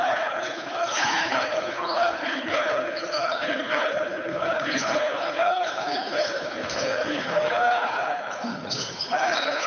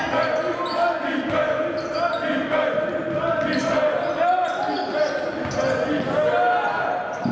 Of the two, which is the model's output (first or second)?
first